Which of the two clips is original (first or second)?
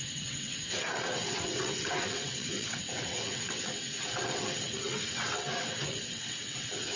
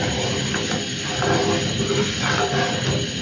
second